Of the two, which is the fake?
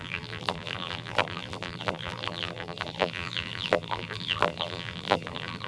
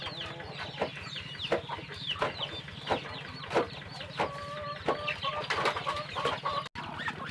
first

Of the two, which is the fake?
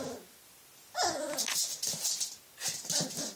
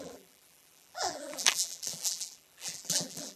second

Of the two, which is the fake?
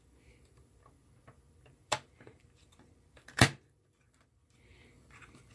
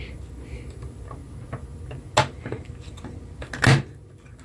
first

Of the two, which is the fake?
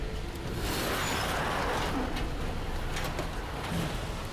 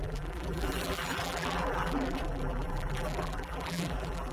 second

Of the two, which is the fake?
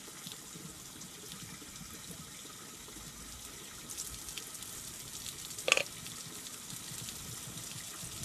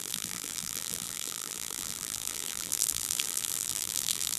second